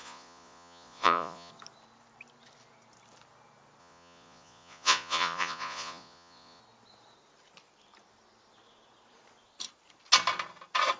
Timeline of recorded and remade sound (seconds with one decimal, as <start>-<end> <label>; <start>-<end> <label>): 0.0-1.5 remade; 1.5-3.8 recorded; 3.8-6.6 remade; 6.6-11.0 recorded